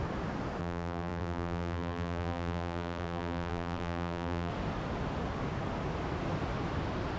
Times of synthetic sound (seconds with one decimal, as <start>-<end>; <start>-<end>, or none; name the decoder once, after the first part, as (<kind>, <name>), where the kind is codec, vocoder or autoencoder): 0.6-4.5 (vocoder, BigVGAN v2)